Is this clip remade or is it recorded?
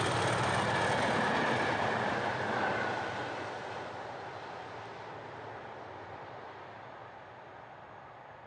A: recorded